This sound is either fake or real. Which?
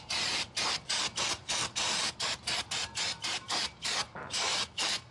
fake